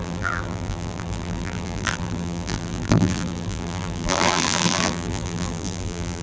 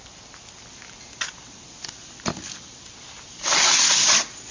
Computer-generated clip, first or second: first